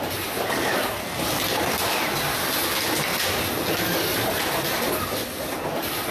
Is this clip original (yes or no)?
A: yes